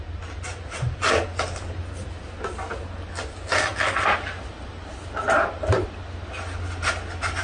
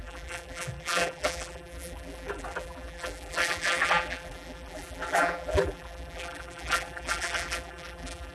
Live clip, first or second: first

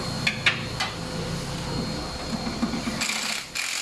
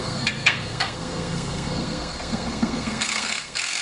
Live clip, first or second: first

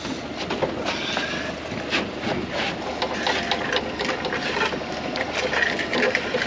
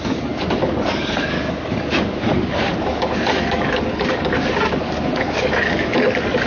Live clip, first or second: first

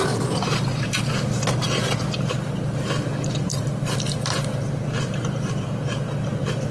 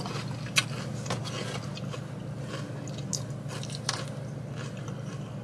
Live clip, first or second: second